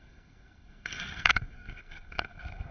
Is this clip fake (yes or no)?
yes